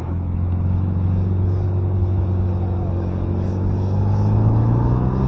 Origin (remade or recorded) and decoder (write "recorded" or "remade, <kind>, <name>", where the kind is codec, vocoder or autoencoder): remade, autoencoder, DAC-VAE